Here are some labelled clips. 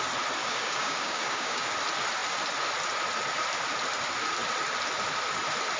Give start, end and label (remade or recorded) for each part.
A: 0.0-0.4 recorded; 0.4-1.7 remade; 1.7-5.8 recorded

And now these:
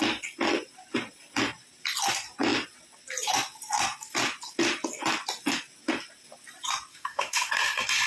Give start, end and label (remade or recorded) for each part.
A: 0.0-6.9 recorded; 6.9-7.5 remade; 7.5-8.1 recorded

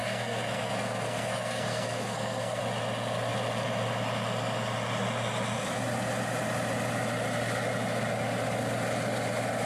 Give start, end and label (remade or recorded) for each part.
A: 0.0-2.6 remade; 2.6-9.7 recorded

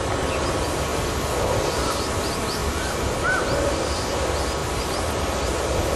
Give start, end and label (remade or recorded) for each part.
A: 0.0-2.6 recorded; 2.6-4.0 remade; 4.0-4.6 recorded; 4.6-5.2 remade; 5.2-6.0 recorded

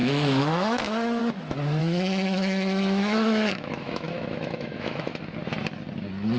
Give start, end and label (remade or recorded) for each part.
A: 0.0-1.2 remade; 1.2-1.8 recorded; 1.8-5.2 remade; 5.2-6.4 recorded

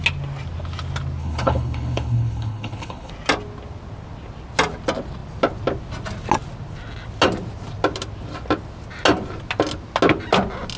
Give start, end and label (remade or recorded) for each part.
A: 0.0-1.2 recorded; 1.2-3.1 remade; 3.1-10.8 recorded

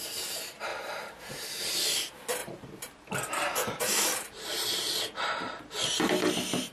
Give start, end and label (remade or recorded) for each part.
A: 0.0-0.7 recorded; 0.7-1.7 remade; 1.7-2.4 recorded; 2.4-6.0 remade; 6.0-6.7 recorded

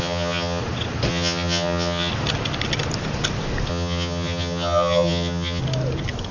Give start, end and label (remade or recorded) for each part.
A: 0.0-0.6 remade; 0.6-1.1 recorded; 1.1-2.1 remade; 2.1-3.7 recorded; 3.7-5.6 remade; 5.6-6.3 recorded